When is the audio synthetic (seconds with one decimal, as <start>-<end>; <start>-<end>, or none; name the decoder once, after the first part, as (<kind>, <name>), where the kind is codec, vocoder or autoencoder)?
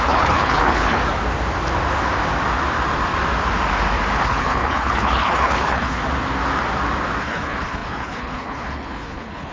0.0-1.0 (codec, HILCodec); 4.2-6.0; 7.2-9.5